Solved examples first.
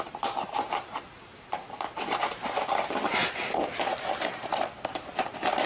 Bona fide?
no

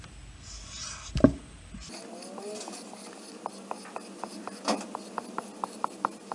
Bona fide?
yes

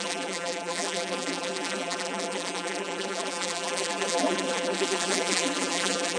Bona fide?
no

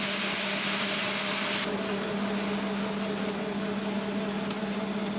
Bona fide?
yes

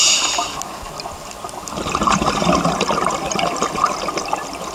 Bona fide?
yes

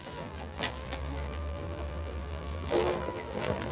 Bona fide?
no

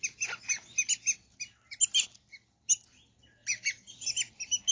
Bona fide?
yes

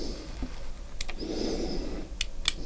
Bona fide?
yes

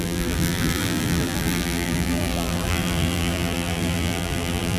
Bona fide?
no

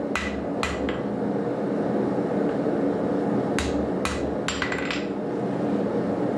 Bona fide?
yes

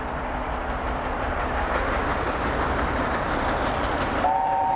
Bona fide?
no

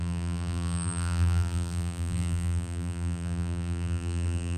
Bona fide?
no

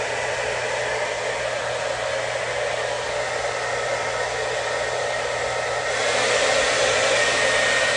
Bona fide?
yes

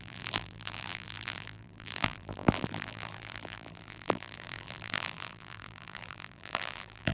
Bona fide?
no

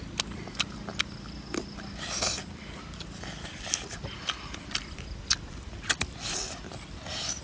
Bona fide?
yes